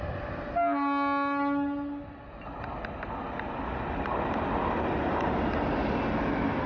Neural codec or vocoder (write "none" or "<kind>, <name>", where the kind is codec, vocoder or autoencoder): none